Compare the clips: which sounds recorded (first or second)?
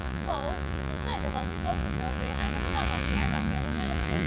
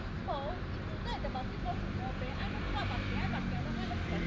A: second